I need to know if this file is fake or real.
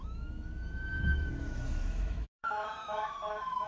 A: fake